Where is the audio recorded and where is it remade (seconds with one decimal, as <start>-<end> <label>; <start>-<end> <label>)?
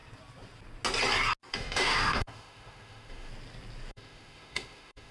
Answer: 0.0-1.5 recorded; 1.5-3.3 remade; 3.3-3.9 recorded; 3.9-5.1 remade